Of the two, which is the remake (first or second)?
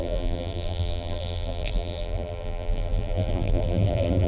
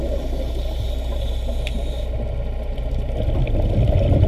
first